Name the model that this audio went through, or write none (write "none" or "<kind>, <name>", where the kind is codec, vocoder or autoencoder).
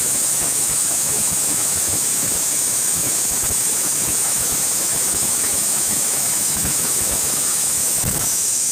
autoencoder, DAC-VAE